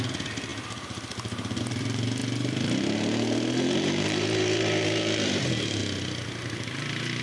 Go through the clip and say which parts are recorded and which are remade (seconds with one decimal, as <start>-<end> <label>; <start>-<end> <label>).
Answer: 0.0-5.8 remade; 5.8-6.4 recorded; 6.4-7.2 remade

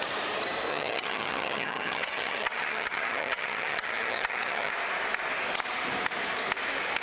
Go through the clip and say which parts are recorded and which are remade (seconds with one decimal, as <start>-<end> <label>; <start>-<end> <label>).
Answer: 0.0-0.7 recorded; 0.7-4.7 remade; 4.7-7.0 recorded